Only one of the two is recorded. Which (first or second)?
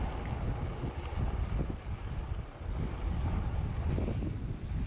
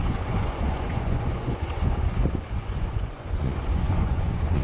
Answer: first